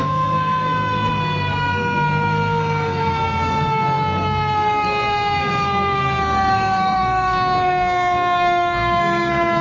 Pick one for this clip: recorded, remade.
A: remade